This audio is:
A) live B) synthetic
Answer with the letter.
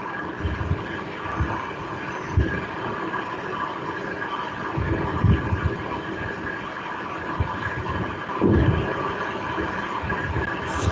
A